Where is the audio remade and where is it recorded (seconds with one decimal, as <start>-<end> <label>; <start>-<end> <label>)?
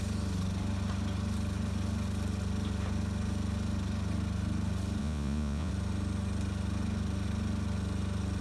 0.0-5.0 recorded; 5.0-5.7 remade; 5.7-8.4 recorded